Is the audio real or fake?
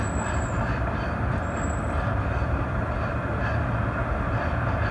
real